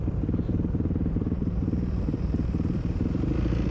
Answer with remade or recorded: remade